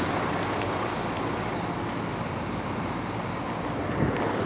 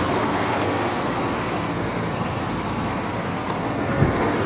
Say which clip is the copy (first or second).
second